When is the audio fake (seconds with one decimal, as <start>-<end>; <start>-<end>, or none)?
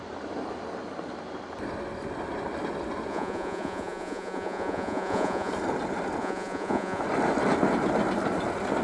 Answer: 3.1-5.5; 6.2-7.0